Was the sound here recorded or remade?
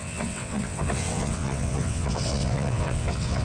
remade